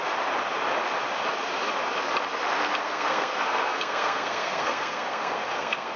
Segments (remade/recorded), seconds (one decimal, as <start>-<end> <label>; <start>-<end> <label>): 0.0-2.8 recorded; 2.8-6.0 remade